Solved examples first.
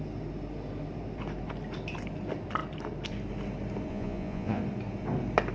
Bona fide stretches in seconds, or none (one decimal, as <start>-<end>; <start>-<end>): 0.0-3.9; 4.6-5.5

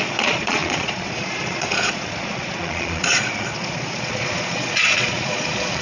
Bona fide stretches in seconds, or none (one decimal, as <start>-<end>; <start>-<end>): none

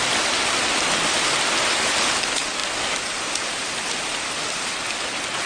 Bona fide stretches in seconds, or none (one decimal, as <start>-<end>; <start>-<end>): 0.0-5.5